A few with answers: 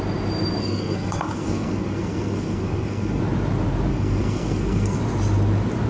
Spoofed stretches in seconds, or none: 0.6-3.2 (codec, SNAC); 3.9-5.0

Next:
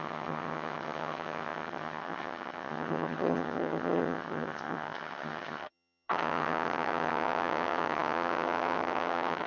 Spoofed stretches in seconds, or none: 0.0-9.5 (vocoder, HiFi-GAN)

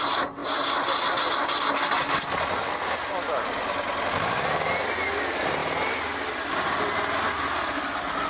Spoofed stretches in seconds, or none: none

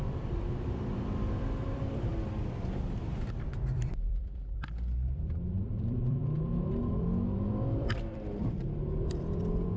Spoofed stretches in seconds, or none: 0.0-6.2 (vocoder, BigVGAN v2); 7.5-9.8

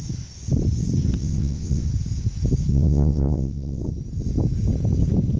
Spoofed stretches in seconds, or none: 1.2-1.9 (vocoder, WaveNeXt); 2.7-3.8